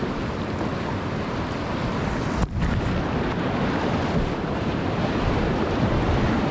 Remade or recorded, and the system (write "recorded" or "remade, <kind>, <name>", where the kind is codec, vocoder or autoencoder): recorded